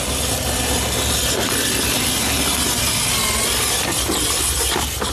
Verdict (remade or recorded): recorded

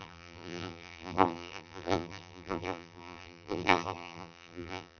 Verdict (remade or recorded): remade